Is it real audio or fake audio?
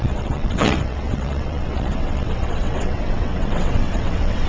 fake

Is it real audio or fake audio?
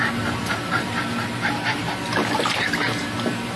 fake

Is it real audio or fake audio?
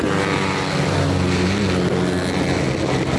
real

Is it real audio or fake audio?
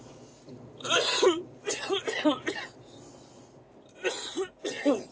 real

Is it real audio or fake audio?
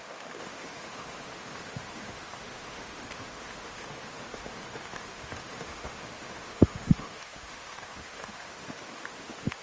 fake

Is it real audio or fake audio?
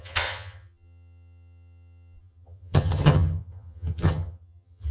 fake